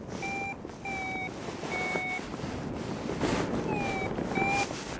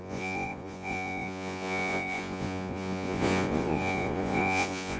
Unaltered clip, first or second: first